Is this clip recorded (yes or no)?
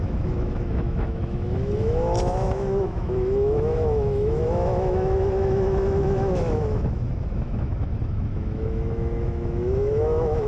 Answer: no